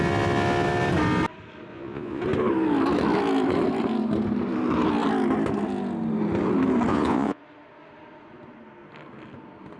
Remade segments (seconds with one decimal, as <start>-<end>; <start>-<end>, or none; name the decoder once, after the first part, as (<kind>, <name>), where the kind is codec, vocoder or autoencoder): 1.7-2.2 (vocoder, Vocos); 6.9-7.4